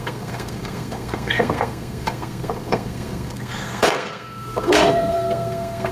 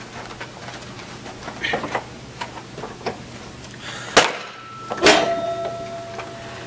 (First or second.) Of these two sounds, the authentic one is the second